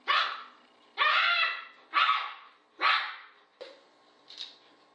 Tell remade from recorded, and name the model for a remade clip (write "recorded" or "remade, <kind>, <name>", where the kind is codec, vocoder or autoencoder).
recorded